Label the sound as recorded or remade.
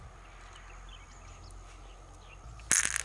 recorded